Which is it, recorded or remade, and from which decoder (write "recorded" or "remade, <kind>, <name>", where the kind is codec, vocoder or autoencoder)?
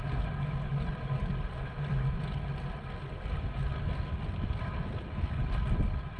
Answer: recorded